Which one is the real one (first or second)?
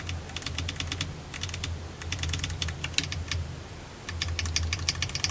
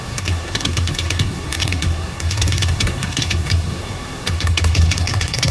first